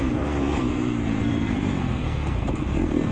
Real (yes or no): no